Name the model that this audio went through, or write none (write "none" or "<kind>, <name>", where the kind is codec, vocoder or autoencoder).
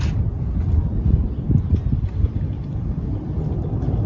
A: none